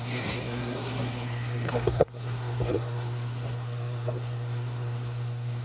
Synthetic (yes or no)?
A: yes